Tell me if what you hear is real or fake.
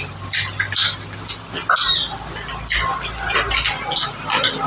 real